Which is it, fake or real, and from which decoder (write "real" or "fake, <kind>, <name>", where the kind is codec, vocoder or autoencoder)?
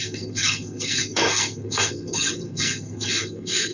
fake, codec, SNAC